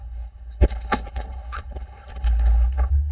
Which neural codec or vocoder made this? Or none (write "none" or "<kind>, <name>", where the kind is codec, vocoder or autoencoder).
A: codec, HILCodec